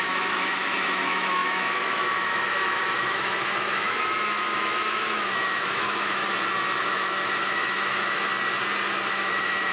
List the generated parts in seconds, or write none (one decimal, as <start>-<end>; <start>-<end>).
0.0-6.2; 6.8-8.3; 9.1-9.7